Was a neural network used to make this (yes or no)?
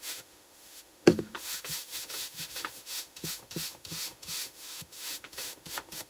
yes